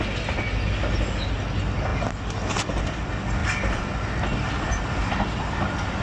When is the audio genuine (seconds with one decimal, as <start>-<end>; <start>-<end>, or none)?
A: 0.0-6.0